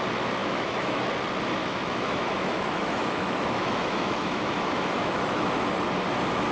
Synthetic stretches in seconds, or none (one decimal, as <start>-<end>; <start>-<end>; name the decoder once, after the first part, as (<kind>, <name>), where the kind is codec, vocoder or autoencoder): 0.4-1.0 (autoencoder, DAC-VAE); 1.6-5.5